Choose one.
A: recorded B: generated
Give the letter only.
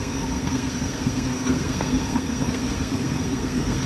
B